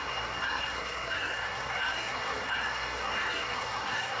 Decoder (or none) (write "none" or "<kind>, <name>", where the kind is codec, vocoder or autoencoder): codec, SNAC